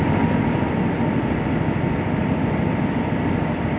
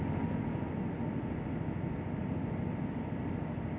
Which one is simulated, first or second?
first